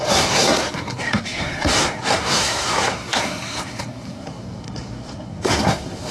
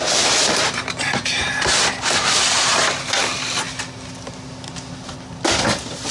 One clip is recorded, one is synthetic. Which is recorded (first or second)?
second